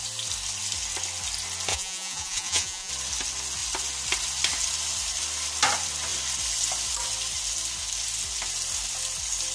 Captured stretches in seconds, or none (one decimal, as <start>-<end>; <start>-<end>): 0.0-1.7; 2.9-9.5